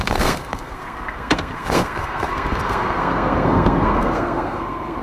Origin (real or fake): fake